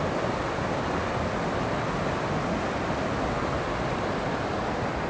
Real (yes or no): yes